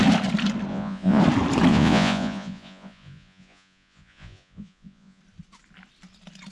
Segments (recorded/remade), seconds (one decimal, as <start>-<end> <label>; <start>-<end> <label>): 0.0-0.7 recorded; 0.7-1.2 remade; 1.2-1.7 recorded; 1.7-5.2 remade; 5.2-6.5 recorded